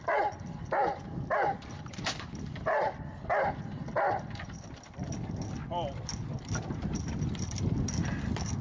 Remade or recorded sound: remade